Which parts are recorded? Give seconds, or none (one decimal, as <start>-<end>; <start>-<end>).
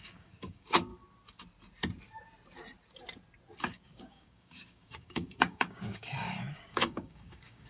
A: 0.9-3.6